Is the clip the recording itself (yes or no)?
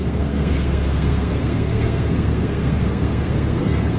no